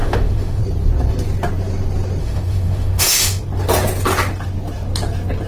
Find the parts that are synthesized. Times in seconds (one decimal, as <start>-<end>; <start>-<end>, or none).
0.0-0.6; 2.2-3.4